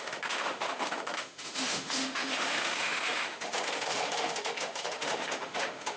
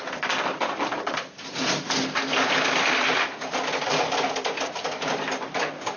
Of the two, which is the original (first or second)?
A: second